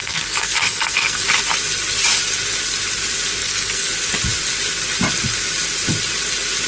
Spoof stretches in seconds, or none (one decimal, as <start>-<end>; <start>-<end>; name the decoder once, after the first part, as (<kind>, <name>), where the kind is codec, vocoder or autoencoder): 0.0-1.2 (codec, SNAC); 3.4-3.9